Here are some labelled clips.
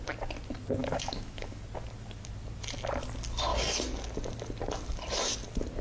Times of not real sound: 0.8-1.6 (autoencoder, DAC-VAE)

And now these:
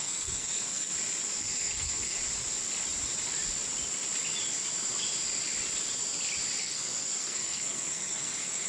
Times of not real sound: 0.0-0.9 (codec, SNAC); 1.4-2.2; 6.6-8.7

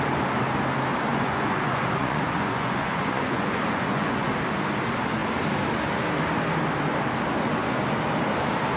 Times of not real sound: 1.1-4.3 (vocoder, Vocos)